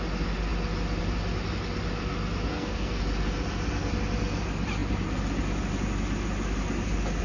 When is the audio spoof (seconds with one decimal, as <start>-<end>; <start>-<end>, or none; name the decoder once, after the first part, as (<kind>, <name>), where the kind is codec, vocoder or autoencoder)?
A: 2.5-3.0 (codec, SNAC)